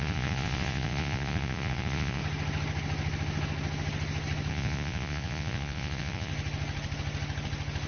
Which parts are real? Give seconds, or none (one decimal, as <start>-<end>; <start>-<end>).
2.2-4.5; 6.3-7.9